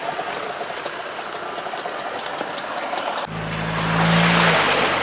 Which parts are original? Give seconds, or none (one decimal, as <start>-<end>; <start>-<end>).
0.0-5.0